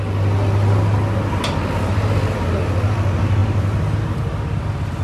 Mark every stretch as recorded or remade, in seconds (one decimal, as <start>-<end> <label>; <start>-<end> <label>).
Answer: 0.0-5.0 recorded